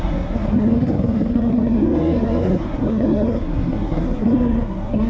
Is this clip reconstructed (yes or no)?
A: yes